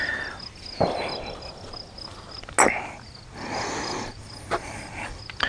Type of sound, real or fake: real